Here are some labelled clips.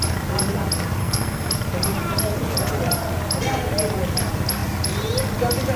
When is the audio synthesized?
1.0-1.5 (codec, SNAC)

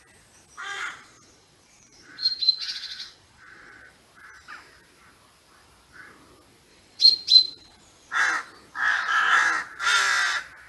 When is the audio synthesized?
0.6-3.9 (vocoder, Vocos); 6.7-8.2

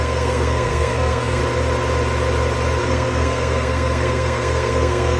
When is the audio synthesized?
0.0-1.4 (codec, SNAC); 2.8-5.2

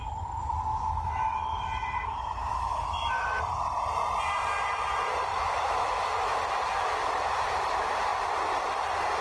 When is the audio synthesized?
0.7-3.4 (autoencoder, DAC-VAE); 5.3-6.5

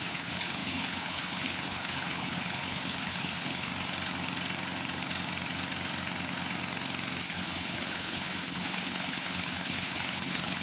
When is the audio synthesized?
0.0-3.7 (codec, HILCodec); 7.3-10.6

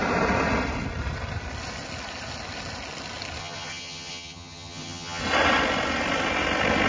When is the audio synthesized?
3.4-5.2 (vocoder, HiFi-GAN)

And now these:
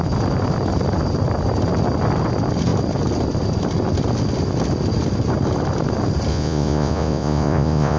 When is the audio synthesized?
6.3-8.0 (vocoder, Vocos)

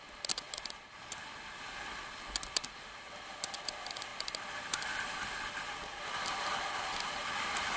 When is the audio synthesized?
none